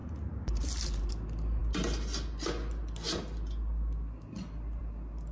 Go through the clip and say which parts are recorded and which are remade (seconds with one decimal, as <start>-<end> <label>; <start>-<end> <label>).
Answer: 0.0-1.1 remade; 1.1-5.3 recorded